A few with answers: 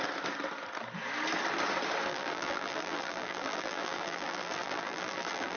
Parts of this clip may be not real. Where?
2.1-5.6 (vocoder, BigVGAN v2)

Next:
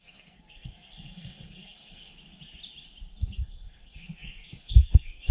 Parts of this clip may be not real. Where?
0.0-2.1 (codec, SNAC); 3.2-5.3

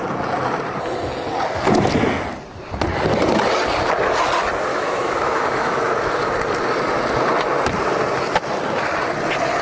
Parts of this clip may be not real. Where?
4.7-6.2 (autoencoder, DAC-VAE)

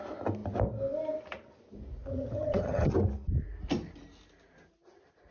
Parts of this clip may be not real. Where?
2.1-2.9 (vocoder, HiFi-GAN)

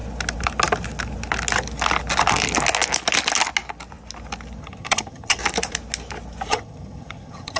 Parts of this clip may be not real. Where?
4.6-5.4 (vocoder, HiFi-GAN); 6.5-7.6

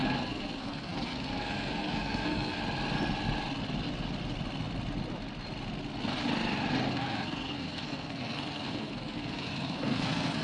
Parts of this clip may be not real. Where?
0.0-2.6 (codec, SNAC); 6.9-10.4

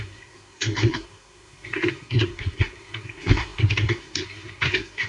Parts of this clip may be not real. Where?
0.0-5.1 (codec, SNAC)